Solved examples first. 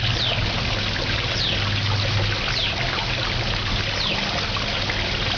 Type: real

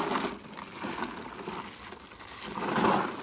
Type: real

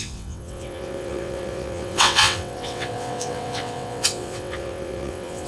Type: fake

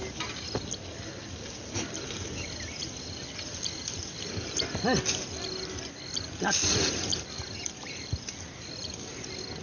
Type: fake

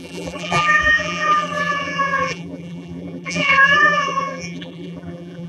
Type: fake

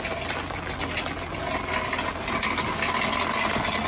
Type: real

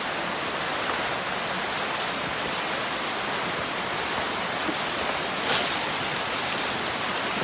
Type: real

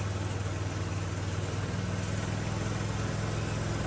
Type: real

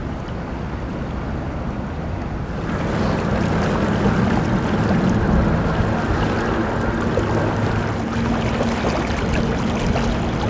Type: real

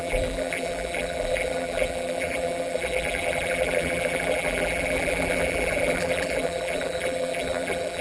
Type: fake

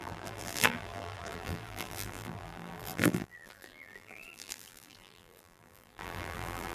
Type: fake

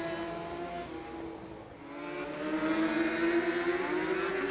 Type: real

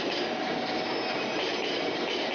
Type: real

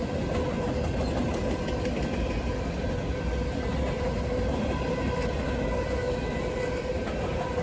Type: real